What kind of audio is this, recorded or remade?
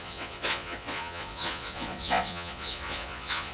remade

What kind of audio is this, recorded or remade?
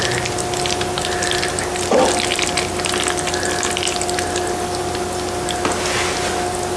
recorded